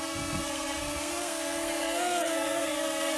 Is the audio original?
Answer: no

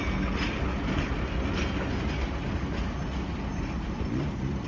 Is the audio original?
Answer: yes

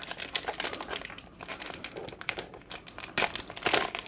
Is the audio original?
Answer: yes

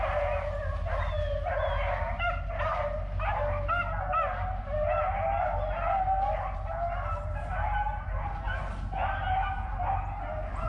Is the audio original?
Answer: yes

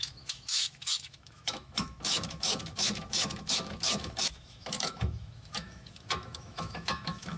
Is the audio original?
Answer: no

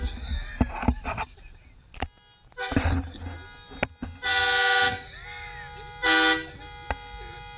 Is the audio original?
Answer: yes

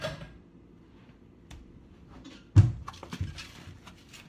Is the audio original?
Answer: no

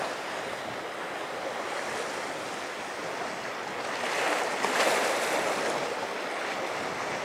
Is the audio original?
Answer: yes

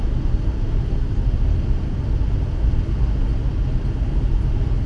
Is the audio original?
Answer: yes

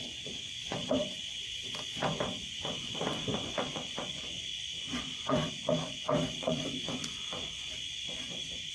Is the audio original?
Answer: no